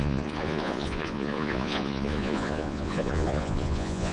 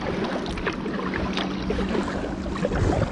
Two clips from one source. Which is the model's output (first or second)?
first